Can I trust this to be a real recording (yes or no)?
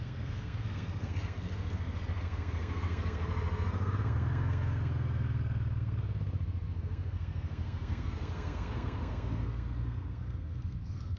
no